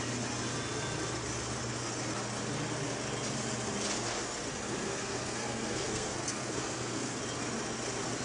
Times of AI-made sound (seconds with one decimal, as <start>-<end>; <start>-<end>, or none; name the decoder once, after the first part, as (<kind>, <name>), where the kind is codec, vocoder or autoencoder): 4.5-7.2 (codec, SNAC)